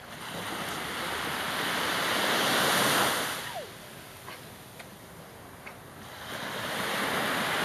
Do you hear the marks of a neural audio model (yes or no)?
no